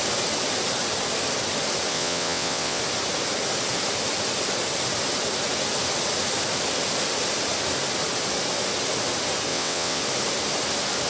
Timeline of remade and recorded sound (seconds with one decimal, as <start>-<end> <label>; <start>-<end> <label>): 0.0-1.9 recorded; 1.9-2.8 remade; 2.8-9.5 recorded; 9.5-10.0 remade; 10.0-11.1 recorded